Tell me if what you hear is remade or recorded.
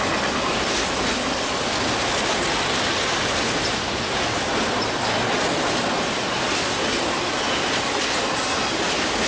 recorded